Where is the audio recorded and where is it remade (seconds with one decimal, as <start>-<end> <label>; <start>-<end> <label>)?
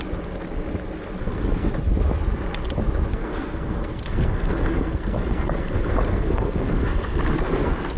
0.0-1.2 recorded; 1.2-1.7 remade; 1.7-3.1 recorded; 3.1-8.0 remade